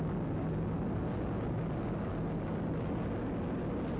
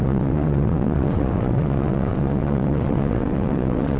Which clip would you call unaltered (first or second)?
first